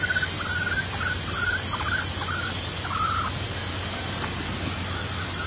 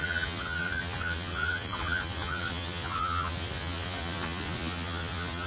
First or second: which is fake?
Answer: second